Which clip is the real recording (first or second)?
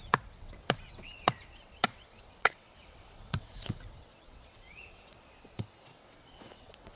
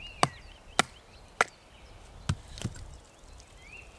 second